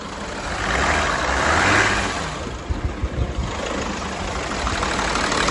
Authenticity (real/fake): real